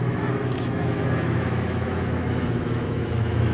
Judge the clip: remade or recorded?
remade